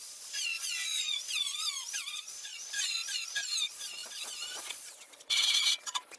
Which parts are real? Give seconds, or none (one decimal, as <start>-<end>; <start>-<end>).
none